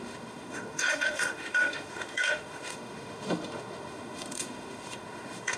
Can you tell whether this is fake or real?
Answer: fake